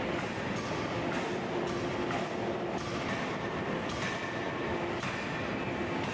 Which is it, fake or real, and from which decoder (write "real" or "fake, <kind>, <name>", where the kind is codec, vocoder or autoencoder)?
real